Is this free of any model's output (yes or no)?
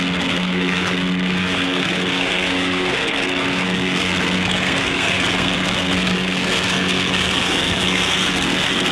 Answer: no